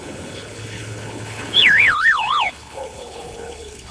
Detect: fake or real fake